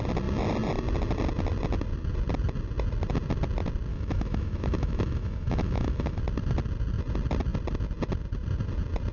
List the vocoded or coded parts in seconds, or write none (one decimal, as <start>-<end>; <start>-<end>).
3.9-6.2